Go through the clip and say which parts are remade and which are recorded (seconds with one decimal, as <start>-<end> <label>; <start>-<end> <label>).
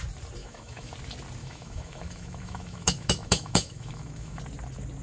0.0-0.4 recorded; 0.4-0.9 remade; 0.9-1.4 recorded; 1.4-4.4 remade; 4.4-5.0 recorded